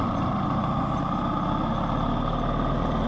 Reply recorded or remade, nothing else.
recorded